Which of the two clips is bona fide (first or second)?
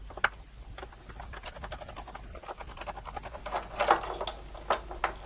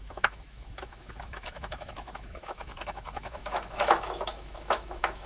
first